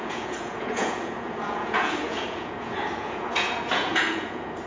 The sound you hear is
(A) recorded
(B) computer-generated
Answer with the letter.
B